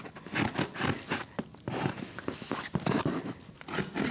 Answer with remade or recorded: recorded